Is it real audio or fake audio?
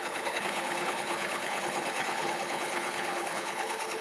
fake